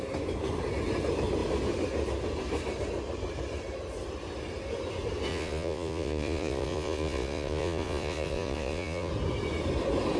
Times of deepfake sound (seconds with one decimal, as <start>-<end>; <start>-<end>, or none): 5.3-9.1